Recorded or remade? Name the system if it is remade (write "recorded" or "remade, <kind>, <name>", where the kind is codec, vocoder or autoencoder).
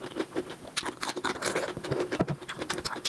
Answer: remade, vocoder, BigVGAN v2